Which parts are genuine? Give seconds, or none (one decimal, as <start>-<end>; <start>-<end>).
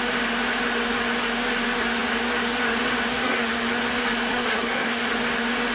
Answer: 0.0-3.2; 3.8-4.3; 5.1-5.7